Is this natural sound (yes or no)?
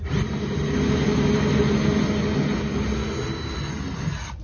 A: yes